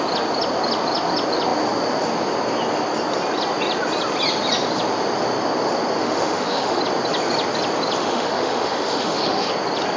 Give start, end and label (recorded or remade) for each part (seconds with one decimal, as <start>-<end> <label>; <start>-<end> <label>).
0.0-6.0 recorded; 6.0-6.8 remade; 6.8-8.0 recorded; 8.0-9.5 remade; 9.5-10.0 recorded